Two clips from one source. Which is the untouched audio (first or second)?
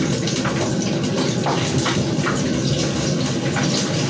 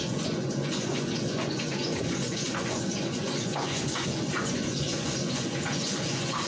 first